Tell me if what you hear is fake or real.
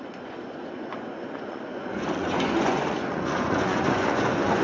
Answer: fake